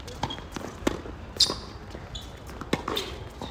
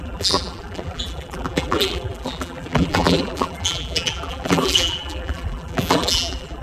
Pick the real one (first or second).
first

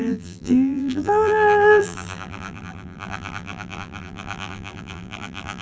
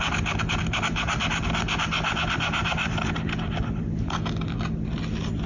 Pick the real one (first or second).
second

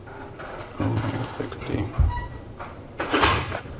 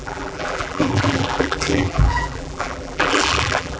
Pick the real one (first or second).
first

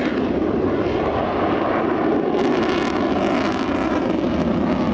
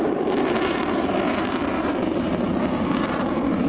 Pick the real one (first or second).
first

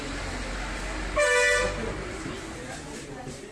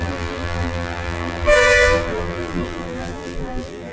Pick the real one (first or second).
first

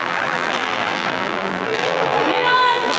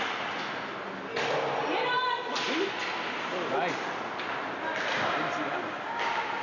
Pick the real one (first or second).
second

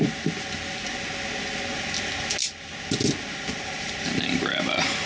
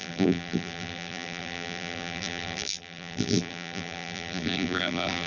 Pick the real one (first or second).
first